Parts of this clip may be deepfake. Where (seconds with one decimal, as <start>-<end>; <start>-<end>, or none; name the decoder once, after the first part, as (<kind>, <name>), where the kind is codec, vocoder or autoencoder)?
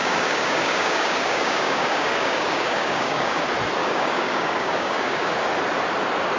0.0-3.4 (codec, DAC); 3.8-5.3